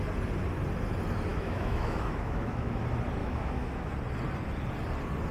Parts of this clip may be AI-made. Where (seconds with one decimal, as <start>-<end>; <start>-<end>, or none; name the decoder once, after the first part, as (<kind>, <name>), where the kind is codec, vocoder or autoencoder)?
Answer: 1.3-2.8 (autoencoder, DAC-VAE); 3.2-3.9